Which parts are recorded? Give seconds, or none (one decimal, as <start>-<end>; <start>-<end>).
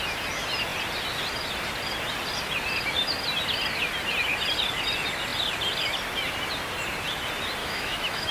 0.0-7.6